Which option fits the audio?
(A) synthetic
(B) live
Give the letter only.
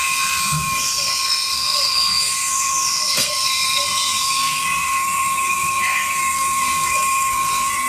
A